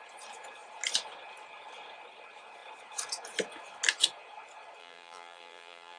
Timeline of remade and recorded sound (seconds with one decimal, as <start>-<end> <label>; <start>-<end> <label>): 0.0-4.8 recorded; 4.8-6.0 remade